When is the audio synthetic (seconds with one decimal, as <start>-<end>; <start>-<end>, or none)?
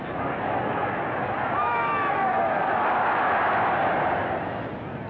none